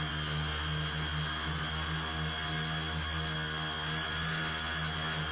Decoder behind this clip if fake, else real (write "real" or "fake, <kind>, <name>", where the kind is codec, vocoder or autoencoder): real